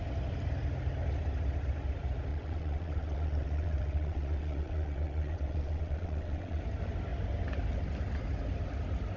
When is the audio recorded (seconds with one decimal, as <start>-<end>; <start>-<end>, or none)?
0.0-2.3; 6.6-9.2